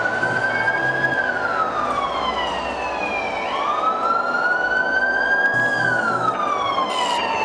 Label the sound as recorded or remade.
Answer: recorded